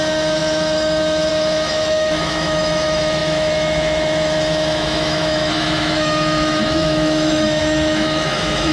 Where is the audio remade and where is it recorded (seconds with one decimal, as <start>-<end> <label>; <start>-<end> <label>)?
0.0-8.7 remade